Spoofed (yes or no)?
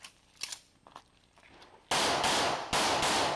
no